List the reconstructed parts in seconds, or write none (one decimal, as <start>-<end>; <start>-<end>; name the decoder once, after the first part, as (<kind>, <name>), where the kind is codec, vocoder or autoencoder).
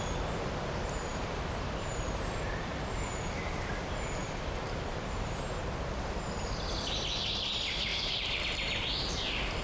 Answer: 1.1-3.5 (vocoder, BigVGAN v2); 4.2-5.6; 7.9-8.4